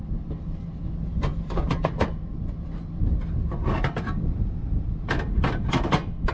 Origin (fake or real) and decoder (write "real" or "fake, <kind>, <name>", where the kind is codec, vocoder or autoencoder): real